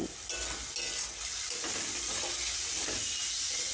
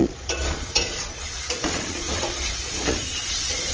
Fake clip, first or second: second